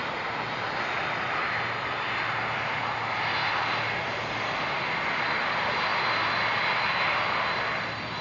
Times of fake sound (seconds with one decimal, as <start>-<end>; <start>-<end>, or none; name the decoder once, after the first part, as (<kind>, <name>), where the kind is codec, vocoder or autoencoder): none